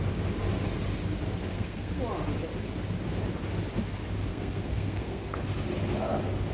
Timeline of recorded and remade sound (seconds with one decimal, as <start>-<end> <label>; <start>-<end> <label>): 0.0-1.5 recorded; 1.5-2.0 remade; 2.0-4.3 recorded; 4.3-5.4 remade; 5.4-6.5 recorded